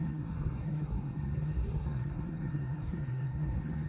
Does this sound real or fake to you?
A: fake